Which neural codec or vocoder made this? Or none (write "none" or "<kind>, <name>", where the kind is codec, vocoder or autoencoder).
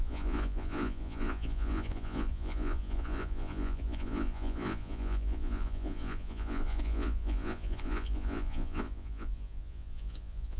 vocoder, Vocos